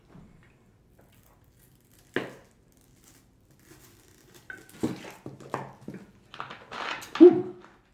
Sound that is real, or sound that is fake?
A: real